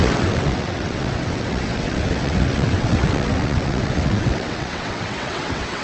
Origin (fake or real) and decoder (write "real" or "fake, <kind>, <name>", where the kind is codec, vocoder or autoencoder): fake, vocoder, WaveNeXt